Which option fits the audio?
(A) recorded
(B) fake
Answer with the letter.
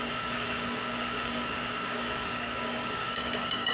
B